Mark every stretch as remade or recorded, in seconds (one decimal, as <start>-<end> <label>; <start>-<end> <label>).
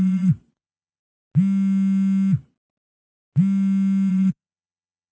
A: 0.0-1.0 remade; 1.0-4.1 recorded; 4.1-5.1 remade